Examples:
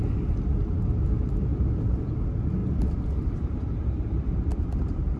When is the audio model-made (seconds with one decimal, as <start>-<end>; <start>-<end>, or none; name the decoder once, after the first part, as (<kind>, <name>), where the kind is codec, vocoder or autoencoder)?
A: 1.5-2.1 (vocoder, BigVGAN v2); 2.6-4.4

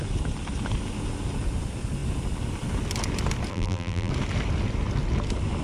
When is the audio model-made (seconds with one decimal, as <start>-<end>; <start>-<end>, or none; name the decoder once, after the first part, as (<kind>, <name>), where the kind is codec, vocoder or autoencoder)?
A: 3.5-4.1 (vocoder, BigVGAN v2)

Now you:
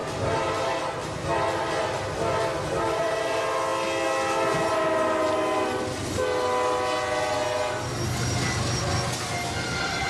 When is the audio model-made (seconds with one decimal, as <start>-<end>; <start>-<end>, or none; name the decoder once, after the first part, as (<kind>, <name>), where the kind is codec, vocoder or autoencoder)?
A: none